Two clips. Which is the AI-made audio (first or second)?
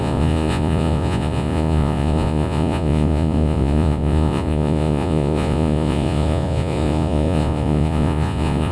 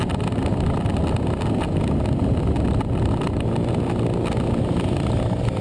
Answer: first